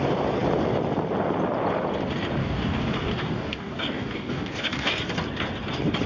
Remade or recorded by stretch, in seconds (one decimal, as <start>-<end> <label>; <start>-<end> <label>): 0.0-2.4 recorded; 2.4-4.9 remade; 4.9-6.1 recorded